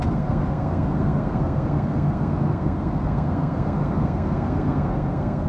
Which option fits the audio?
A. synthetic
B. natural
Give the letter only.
A